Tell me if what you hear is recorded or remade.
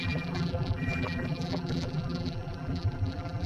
remade